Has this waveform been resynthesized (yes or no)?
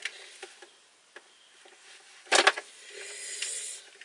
no